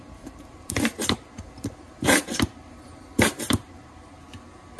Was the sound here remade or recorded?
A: remade